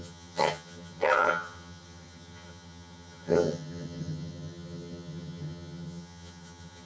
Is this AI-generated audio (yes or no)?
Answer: yes